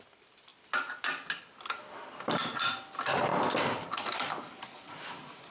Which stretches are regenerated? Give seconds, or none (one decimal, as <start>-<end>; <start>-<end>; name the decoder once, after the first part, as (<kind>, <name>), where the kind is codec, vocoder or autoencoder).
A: none